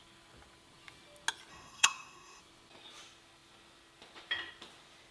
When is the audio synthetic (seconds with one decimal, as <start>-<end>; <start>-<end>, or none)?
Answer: 1.5-2.4